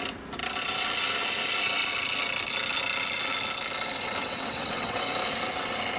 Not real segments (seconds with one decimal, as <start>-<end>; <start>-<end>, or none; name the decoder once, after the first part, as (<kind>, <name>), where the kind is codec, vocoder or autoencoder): 4.2-5.0 (vocoder, WaveNeXt)